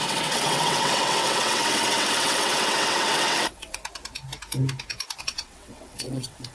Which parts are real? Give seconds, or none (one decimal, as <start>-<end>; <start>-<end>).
3.8-5.2